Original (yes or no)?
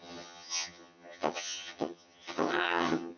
no